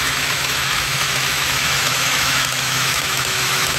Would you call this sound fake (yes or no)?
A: yes